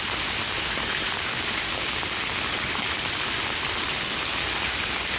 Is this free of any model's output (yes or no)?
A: yes